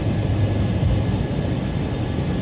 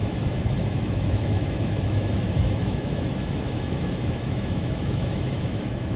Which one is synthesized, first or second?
second